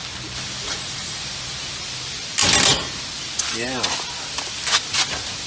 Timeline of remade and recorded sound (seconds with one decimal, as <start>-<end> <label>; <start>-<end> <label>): 0.0-0.6 recorded; 0.6-1.2 remade; 1.2-5.5 recorded